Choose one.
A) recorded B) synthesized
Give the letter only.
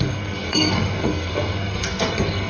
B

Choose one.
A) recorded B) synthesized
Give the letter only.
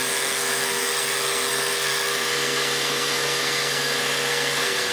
B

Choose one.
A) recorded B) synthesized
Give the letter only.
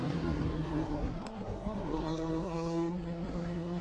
B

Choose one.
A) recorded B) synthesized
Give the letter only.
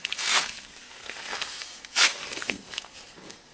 B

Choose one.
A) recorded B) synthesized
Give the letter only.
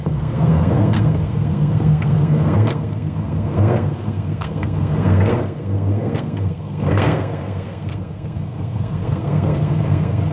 B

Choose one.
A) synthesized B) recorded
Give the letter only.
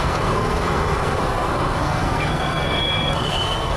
A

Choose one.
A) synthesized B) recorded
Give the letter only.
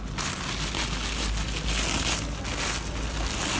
B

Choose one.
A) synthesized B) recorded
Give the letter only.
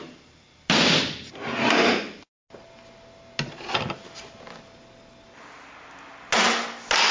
B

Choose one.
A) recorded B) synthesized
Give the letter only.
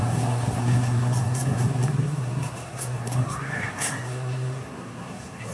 B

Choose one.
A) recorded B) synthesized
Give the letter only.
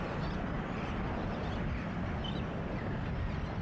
A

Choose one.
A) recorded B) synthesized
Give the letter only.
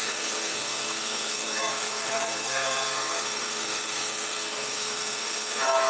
B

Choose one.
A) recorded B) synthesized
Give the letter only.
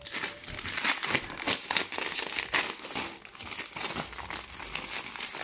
A